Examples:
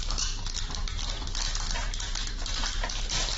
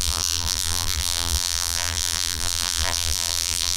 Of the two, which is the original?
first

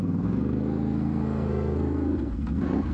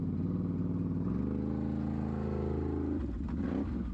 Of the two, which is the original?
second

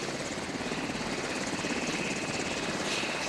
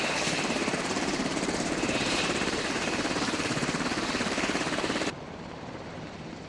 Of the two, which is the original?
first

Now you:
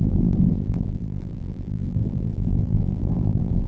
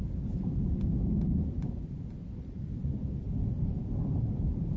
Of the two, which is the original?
second